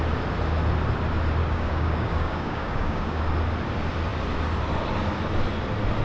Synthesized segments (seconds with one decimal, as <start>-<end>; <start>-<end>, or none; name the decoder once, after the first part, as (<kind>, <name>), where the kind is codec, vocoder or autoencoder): 1.4-3.2 (codec, DAC)